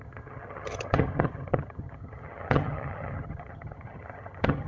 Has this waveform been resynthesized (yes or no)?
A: yes